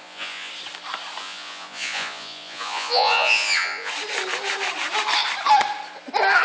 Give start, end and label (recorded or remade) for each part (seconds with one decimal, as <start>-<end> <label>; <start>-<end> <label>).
0.0-0.5 remade; 0.5-1.2 recorded; 1.2-3.9 remade; 3.9-6.4 recorded